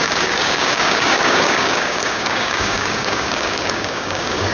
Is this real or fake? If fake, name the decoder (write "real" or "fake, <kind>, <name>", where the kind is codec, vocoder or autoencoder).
fake, codec, DAC